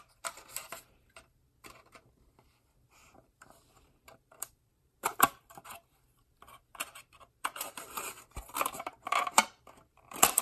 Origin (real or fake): fake